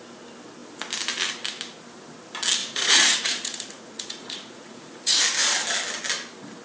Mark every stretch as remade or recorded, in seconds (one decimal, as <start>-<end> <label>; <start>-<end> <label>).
0.0-2.6 recorded; 2.6-5.2 remade; 5.2-6.6 recorded